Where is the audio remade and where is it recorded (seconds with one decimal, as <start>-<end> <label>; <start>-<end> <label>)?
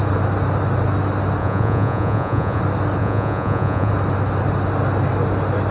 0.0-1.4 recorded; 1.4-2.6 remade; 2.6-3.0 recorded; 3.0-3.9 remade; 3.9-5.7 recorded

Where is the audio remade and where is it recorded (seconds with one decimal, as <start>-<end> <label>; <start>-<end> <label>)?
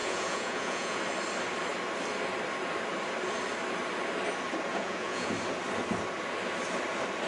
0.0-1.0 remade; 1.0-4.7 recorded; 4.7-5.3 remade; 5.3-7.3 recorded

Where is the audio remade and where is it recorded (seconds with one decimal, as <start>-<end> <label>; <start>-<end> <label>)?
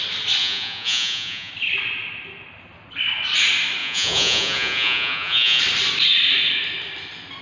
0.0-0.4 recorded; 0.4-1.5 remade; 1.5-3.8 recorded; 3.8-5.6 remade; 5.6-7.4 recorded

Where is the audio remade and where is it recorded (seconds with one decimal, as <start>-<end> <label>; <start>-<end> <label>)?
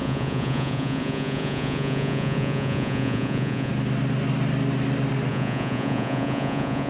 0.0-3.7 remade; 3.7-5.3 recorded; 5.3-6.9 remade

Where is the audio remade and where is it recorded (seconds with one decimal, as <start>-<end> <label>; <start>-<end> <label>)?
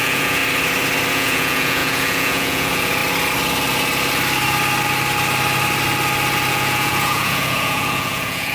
0.0-0.4 remade; 0.4-1.1 recorded; 1.1-3.0 remade; 3.0-6.5 recorded; 6.5-8.5 remade